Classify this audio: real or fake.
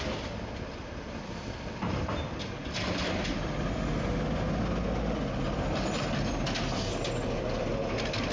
real